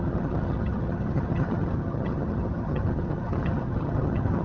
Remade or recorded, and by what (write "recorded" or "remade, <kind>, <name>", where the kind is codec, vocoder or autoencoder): remade, vocoder, HiFi-GAN